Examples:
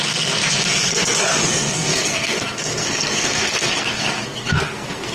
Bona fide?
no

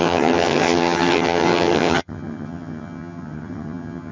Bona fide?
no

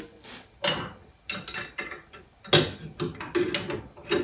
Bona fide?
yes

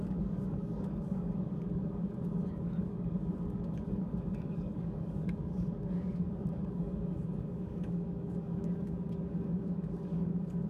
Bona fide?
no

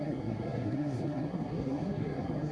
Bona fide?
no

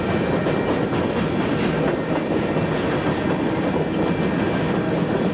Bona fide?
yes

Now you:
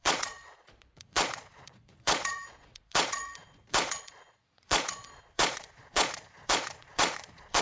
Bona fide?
no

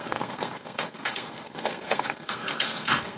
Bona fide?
no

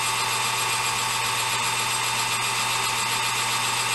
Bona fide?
yes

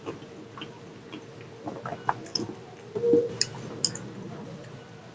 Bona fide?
yes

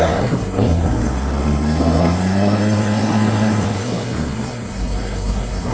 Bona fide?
no